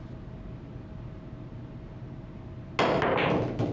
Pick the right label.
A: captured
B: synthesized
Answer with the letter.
A